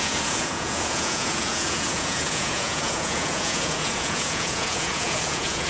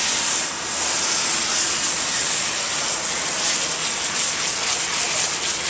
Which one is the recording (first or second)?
second